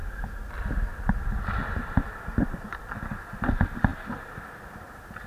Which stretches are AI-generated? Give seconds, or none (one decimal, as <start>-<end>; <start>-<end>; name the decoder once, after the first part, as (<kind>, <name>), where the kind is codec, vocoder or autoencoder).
0.9-3.2 (vocoder, BigVGAN v2)